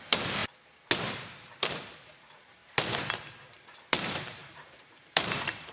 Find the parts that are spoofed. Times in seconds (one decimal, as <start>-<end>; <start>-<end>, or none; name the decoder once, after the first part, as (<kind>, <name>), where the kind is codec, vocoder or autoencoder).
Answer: 0.0-0.4 (vocoder, BigVGAN v2); 1.1-2.6; 3.5-5.7